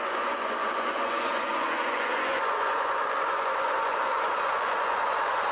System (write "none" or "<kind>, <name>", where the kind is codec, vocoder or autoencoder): vocoder, Vocos